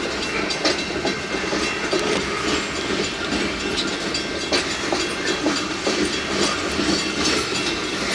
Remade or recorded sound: recorded